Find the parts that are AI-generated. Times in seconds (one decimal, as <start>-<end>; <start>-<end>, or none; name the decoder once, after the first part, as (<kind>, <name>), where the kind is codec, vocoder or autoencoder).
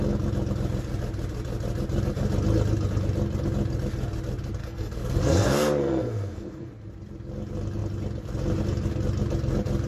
4.6-6.7 (codec, SNAC)